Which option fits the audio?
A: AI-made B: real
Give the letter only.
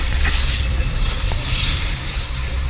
A